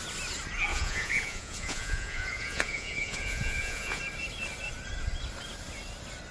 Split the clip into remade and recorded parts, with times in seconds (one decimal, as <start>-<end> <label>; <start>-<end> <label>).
0.0-0.7 recorded; 0.7-4.0 remade; 4.0-6.3 recorded